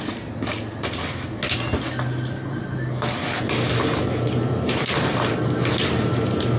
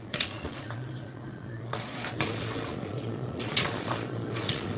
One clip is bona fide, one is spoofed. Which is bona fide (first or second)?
first